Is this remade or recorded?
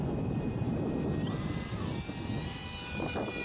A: recorded